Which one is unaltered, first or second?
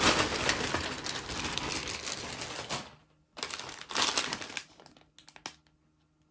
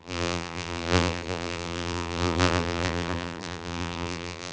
first